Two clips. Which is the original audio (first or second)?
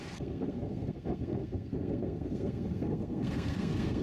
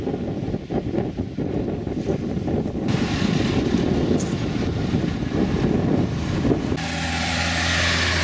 second